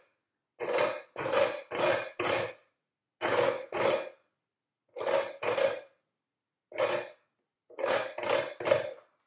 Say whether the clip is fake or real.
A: real